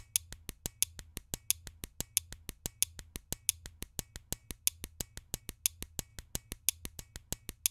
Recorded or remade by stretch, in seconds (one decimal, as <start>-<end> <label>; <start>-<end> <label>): 0.0-7.7 recorded